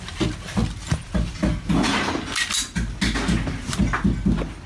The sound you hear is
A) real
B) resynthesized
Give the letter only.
A